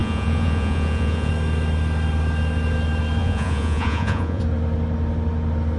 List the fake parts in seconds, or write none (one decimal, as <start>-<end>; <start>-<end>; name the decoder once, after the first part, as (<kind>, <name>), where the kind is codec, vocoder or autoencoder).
0.0-1.3 (vocoder, Vocos); 3.2-4.4